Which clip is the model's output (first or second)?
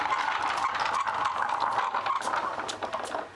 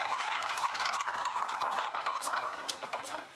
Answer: second